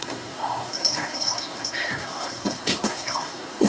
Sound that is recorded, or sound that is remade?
remade